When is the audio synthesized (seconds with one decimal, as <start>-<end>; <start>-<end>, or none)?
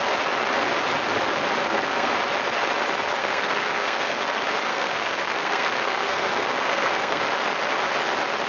1.6-2.1; 3.2-4.2; 4.7-7.2